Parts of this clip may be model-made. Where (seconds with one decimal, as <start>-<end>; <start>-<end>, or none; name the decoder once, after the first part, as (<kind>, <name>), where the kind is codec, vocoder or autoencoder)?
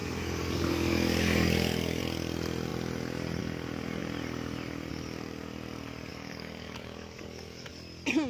0.0-2.0 (codec, DAC); 6.1-7.7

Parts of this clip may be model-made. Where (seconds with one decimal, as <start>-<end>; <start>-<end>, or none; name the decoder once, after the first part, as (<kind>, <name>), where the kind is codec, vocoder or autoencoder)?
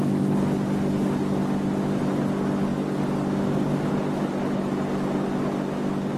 none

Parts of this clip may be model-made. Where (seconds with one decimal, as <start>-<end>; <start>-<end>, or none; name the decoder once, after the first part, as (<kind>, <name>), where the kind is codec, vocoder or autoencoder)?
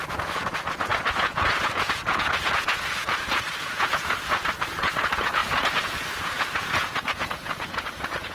0.0-8.3 (vocoder, Vocos)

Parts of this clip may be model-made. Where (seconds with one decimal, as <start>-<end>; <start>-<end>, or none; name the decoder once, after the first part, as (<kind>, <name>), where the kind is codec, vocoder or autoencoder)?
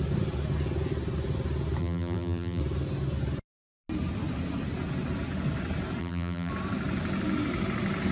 1.8-2.6 (vocoder, BigVGAN v2); 6.0-6.5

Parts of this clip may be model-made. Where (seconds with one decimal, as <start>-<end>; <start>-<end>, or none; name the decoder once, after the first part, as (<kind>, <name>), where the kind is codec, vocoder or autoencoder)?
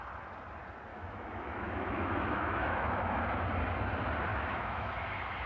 0.9-3.2 (autoencoder, DAC-VAE); 4.3-4.9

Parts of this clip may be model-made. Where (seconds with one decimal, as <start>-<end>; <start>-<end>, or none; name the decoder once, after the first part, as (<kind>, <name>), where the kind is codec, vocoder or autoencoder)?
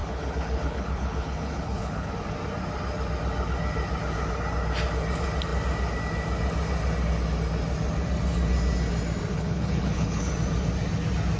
0.0-2.1 (codec, HILCodec); 9.3-10.3